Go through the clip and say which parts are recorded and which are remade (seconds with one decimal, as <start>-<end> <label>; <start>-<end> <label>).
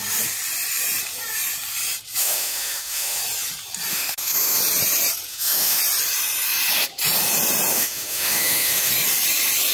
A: 0.0-2.2 recorded; 2.2-3.2 remade; 3.2-3.9 recorded; 3.9-4.6 remade; 4.6-5.3 recorded; 5.3-5.8 remade; 5.8-7.7 recorded; 7.7-8.9 remade; 8.9-9.7 recorded